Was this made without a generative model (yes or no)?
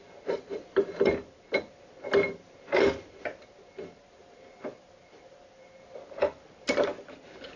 yes